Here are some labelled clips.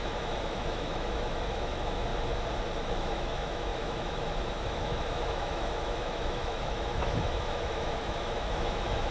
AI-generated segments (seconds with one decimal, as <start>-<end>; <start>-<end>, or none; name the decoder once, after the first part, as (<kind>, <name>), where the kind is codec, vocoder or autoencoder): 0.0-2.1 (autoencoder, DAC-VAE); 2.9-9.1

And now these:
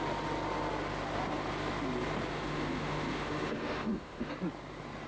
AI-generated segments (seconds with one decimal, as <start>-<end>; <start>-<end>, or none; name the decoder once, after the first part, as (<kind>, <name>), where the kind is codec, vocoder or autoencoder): 2.3-4.3 (autoencoder, DAC-VAE)

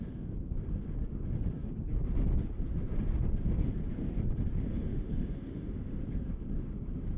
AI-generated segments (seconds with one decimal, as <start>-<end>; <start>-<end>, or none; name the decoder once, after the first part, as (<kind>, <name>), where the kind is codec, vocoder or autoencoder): 4.7-6.0 (autoencoder, DAC-VAE)

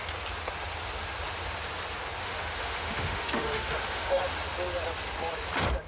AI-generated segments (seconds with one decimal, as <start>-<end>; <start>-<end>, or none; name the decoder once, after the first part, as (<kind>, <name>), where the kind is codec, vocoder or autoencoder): 2.2-4.2 (autoencoder, DAC-VAE)